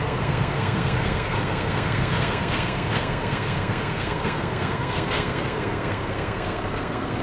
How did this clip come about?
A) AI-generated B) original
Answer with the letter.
A